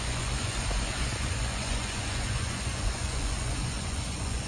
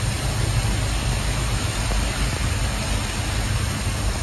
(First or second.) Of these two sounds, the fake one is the first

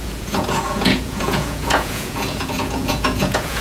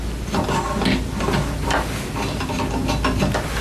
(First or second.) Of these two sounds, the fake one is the first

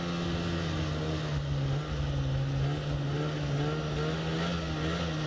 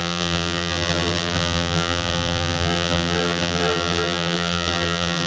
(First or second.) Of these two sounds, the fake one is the second